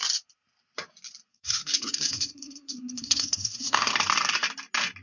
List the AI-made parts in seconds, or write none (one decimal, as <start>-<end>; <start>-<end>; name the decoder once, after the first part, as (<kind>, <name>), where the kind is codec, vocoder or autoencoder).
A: 1.3-3.9 (codec, SNAC)